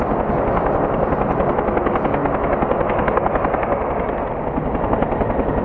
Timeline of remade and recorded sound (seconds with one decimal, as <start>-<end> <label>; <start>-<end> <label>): 0.0-5.6 recorded